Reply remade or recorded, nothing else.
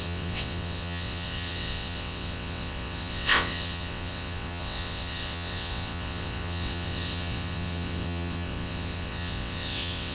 remade